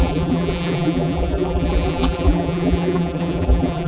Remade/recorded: remade